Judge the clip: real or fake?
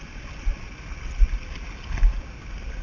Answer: real